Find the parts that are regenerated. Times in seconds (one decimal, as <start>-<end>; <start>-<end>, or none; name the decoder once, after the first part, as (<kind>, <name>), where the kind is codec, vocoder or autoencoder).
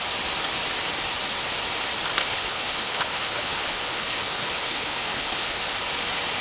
2.2-5.6 (codec, HILCodec)